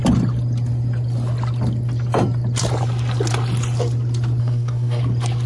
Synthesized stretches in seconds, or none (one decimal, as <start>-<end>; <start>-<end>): 4.4-5.0